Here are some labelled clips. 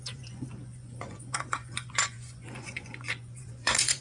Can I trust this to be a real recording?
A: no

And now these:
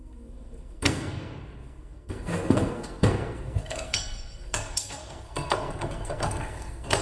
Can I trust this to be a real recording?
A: no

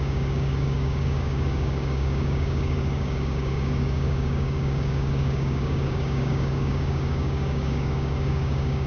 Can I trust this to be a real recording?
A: no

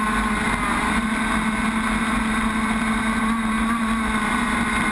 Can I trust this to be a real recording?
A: yes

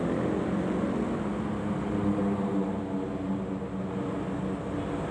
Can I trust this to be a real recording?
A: yes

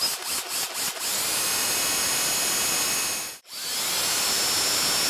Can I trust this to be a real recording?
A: yes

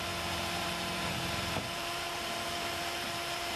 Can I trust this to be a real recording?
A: no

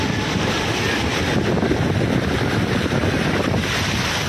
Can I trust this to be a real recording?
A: yes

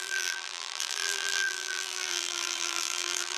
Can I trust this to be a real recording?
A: no